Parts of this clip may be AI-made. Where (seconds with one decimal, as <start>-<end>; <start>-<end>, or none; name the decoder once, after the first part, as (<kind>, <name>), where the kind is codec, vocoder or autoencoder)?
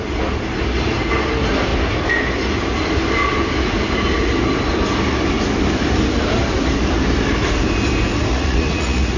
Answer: 8.3-9.2 (vocoder, Vocos)